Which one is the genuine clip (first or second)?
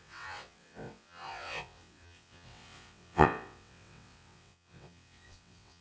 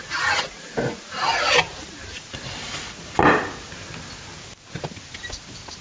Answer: second